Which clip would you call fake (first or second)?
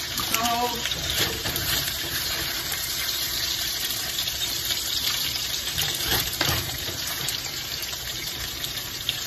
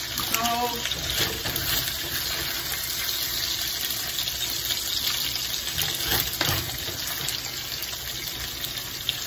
first